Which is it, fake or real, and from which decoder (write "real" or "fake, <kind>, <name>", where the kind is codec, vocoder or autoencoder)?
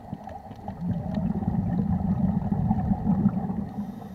real